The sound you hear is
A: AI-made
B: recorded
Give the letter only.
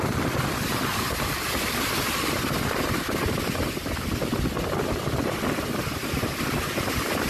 B